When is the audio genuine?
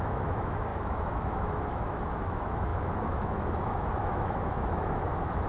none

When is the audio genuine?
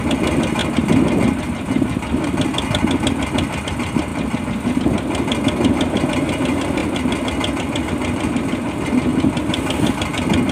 0.0-10.5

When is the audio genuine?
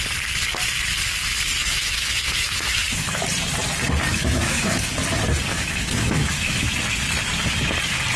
0.0-1.6; 3.2-4.1; 4.9-5.5; 6.7-8.2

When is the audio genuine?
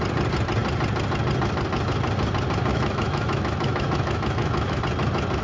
0.0-2.7; 4.8-5.4